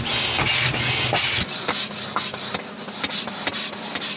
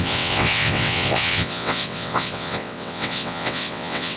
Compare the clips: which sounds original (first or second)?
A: first